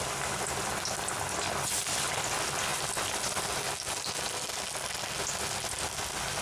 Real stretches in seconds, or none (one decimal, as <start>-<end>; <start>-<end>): 0.0-6.4